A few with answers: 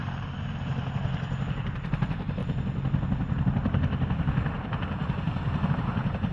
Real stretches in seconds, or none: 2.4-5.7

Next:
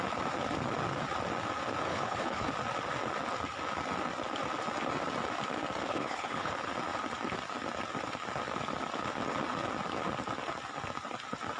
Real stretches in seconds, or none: 0.0-1.9; 2.5-5.9; 6.5-11.6